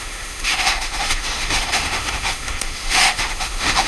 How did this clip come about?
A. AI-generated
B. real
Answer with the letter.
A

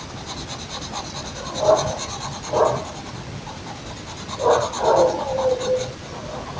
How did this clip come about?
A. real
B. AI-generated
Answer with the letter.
A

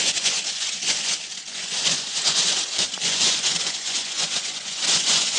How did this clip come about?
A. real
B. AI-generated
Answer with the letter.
B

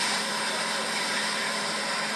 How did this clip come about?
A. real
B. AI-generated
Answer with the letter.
B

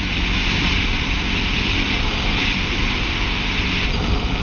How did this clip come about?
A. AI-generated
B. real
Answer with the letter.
B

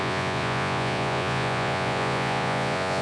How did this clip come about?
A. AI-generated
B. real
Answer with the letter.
A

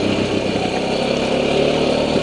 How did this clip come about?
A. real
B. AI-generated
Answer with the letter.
A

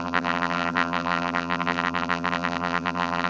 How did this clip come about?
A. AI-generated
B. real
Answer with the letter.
A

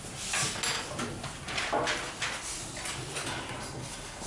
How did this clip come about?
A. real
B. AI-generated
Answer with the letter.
A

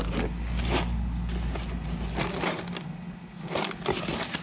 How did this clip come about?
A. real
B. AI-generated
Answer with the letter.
A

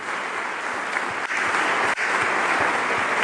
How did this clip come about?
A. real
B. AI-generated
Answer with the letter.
A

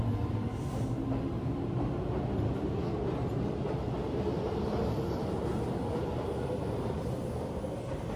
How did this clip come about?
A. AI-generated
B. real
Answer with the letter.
B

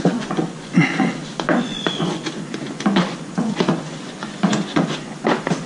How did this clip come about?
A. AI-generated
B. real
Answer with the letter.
A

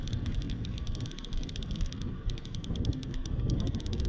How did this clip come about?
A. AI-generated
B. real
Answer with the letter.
A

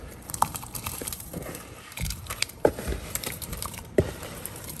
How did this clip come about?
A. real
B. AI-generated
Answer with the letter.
B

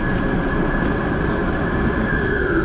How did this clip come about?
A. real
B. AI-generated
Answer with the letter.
A